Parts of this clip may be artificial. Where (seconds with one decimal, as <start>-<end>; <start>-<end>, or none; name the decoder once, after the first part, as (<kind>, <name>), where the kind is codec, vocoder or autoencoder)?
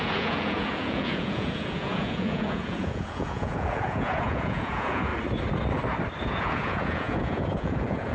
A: 0.0-5.1 (vocoder, Vocos); 6.2-8.1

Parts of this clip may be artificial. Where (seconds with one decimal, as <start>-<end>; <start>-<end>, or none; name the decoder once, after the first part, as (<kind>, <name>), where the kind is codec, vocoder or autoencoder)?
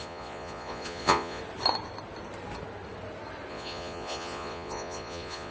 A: 0.0-1.4 (vocoder, Vocos); 3.5-5.5